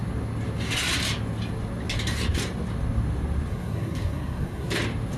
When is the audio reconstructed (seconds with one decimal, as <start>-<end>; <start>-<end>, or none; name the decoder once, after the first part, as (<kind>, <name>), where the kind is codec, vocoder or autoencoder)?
3.5-4.7 (codec, SNAC)